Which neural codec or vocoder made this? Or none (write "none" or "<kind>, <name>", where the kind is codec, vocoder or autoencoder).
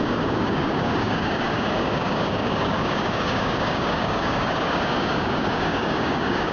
codec, DAC